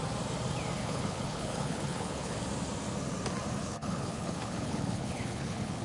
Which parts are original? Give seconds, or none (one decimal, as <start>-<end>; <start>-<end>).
0.0-0.8; 2.4-3.6